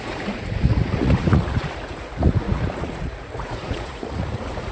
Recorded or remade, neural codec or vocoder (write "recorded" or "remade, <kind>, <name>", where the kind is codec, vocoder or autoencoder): remade, vocoder, Vocos